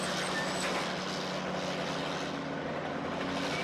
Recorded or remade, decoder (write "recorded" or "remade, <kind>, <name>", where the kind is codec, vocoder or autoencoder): recorded